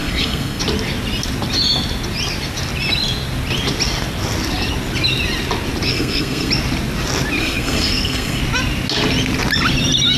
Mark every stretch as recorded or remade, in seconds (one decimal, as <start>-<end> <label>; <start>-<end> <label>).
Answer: 0.0-0.6 remade; 0.6-5.9 recorded; 5.9-6.5 remade; 6.5-7.4 recorded; 7.4-8.4 remade; 8.4-10.2 recorded